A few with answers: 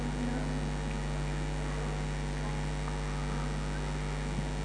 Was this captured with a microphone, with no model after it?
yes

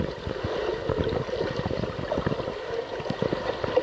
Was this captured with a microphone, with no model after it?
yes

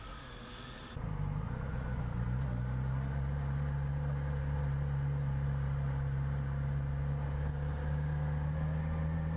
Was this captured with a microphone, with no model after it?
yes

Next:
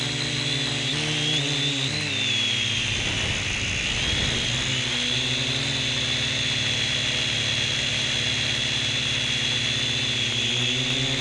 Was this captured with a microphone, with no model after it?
yes